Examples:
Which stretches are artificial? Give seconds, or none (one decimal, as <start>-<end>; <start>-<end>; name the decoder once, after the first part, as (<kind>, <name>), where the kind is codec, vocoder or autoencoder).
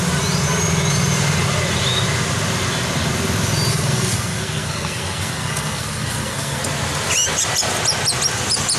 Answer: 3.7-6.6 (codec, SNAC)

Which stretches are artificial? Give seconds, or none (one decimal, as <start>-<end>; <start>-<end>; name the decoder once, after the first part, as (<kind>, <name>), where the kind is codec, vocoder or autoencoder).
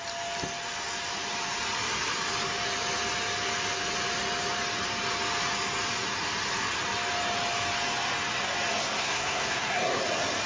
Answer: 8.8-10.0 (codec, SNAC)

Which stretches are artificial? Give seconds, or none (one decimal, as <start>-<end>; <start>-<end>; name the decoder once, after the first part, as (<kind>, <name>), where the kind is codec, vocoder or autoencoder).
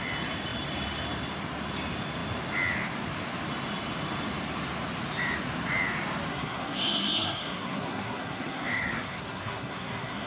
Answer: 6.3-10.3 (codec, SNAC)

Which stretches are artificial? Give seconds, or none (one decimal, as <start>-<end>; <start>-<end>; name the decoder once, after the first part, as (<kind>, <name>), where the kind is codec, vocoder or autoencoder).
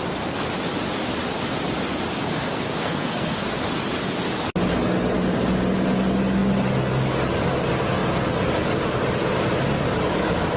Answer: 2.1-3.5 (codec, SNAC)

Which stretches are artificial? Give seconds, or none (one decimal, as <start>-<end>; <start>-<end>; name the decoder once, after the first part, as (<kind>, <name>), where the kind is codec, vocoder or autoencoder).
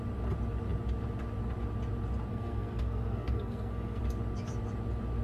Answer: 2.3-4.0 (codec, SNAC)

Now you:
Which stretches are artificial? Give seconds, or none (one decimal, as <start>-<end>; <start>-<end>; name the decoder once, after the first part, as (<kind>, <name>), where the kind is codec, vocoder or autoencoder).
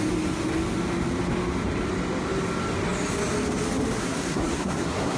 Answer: 4.0-5.2 (codec, SNAC)